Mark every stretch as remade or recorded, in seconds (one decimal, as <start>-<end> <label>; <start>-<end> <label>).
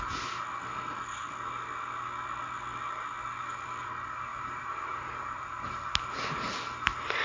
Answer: 0.0-4.3 recorded; 4.3-5.7 remade; 5.7-7.2 recorded